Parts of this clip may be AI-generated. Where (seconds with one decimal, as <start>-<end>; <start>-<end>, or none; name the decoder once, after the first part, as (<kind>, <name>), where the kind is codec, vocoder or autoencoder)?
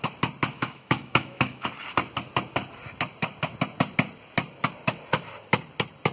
0.5-1.7 (autoencoder, DAC-VAE)